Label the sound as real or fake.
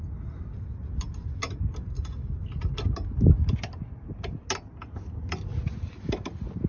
real